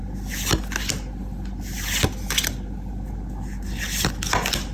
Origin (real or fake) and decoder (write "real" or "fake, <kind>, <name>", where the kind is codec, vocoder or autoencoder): real